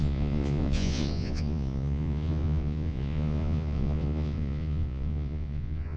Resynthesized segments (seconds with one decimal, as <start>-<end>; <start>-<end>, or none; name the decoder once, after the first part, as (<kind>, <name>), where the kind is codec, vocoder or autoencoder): 0.0-6.0 (vocoder, Vocos)